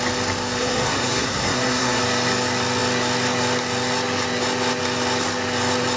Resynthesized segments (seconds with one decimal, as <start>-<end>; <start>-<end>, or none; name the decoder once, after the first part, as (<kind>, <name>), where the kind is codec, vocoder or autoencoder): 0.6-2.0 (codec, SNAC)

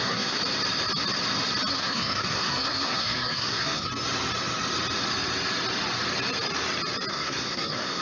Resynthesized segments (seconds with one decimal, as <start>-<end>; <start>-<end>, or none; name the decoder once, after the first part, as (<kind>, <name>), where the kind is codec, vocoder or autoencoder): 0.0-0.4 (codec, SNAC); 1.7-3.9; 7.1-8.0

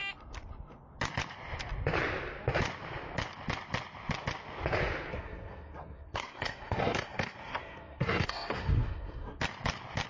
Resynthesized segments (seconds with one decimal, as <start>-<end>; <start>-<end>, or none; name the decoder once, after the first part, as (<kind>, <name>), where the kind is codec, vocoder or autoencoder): 5.1-9.4 (codec, SNAC)

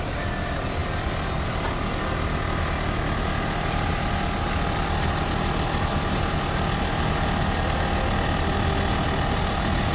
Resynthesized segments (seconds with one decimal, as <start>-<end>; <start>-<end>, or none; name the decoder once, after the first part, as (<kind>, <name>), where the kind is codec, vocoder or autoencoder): none